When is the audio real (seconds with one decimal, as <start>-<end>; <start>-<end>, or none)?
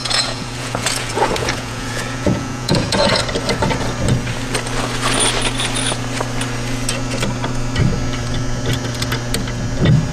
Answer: 3.2-10.1